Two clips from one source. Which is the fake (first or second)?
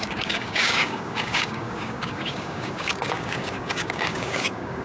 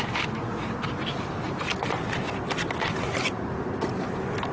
first